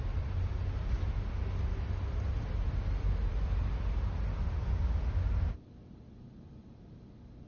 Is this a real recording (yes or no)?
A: yes